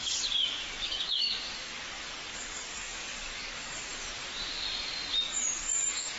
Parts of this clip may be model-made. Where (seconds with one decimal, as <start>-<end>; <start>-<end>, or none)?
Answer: 0.0-3.9; 5.2-6.2